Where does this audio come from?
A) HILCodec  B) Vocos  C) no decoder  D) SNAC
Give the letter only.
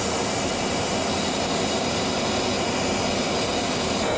C